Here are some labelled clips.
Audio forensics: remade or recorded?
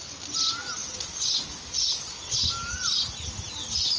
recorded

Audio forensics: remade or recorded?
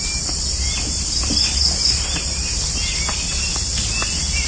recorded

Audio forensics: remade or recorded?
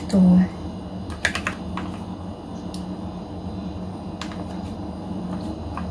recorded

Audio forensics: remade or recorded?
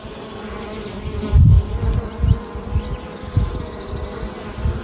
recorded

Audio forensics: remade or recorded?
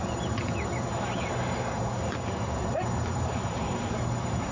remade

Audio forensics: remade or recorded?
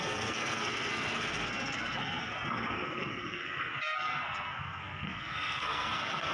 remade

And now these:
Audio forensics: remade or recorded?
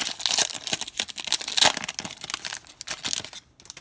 recorded